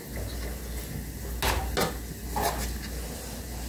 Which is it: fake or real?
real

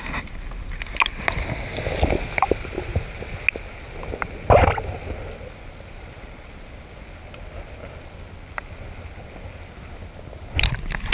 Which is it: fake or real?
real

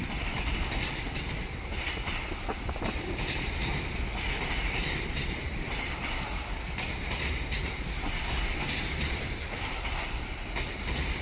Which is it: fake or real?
fake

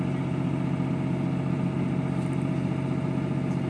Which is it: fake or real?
real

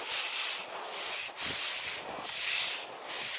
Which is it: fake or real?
real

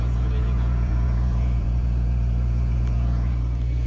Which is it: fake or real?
fake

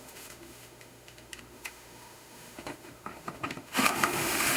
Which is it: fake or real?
fake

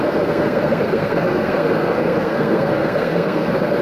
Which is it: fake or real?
fake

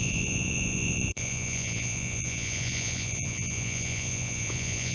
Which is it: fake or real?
fake